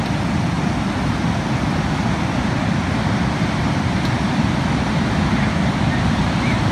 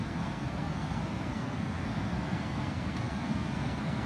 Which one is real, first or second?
first